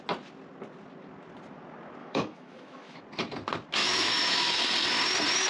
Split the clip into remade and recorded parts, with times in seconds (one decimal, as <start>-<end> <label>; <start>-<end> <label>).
0.0-2.0 recorded; 2.0-3.0 remade; 3.0-3.8 recorded; 3.8-4.6 remade; 4.6-5.5 recorded